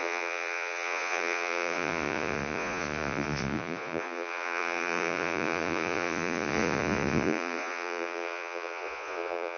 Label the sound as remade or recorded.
remade